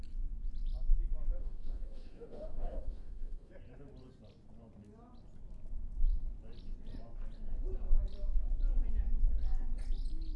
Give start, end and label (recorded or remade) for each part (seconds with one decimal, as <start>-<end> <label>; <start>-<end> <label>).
0.0-1.4 recorded; 1.4-3.5 remade; 3.5-10.4 recorded